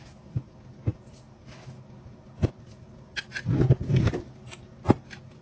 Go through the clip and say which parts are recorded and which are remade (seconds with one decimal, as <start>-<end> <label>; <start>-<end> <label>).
0.0-5.4 recorded